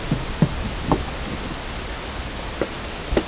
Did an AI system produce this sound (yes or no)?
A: no